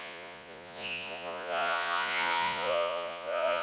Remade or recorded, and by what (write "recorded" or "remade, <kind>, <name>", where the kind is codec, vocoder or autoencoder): remade, vocoder, Vocos